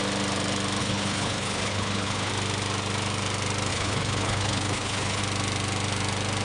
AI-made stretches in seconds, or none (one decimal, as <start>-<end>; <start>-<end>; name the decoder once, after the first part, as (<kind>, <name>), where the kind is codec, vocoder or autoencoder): 0.8-2.3 (codec, HILCodec); 3.7-5.2